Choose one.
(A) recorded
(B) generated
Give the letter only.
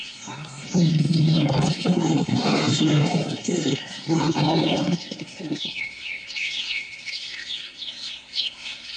B